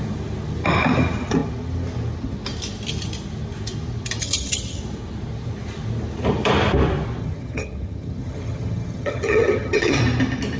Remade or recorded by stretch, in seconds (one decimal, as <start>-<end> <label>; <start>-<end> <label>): 0.0-4.2 recorded; 4.2-4.8 remade; 4.8-7.2 recorded; 7.2-10.0 remade; 10.0-10.6 recorded